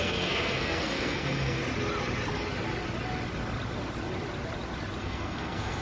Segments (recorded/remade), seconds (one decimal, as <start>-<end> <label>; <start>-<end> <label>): 0.0-1.6 remade; 1.6-5.0 recorded; 5.0-5.8 remade